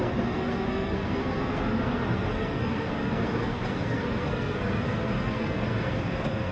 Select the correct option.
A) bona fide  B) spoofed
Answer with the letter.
B